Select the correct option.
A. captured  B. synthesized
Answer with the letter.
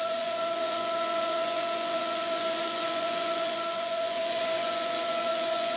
B